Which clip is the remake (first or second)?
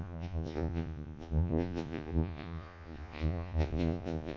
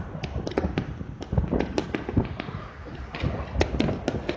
first